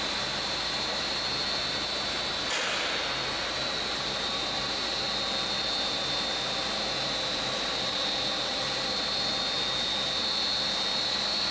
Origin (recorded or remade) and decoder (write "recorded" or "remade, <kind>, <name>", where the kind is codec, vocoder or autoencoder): recorded